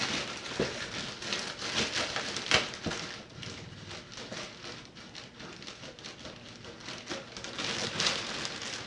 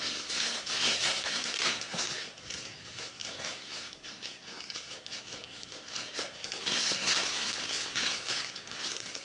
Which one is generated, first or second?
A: second